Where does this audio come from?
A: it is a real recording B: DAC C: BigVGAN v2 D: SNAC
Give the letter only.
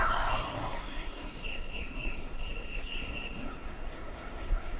D